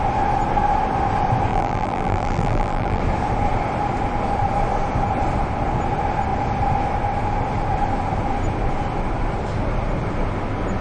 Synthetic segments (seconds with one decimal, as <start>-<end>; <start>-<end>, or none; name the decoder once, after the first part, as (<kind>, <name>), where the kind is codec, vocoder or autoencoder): 1.5-3.0 (vocoder, BigVGAN v2)